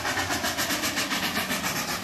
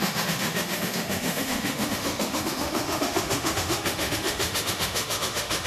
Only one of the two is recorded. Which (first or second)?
first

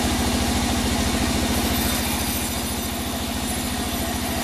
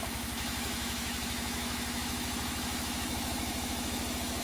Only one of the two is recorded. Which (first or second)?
first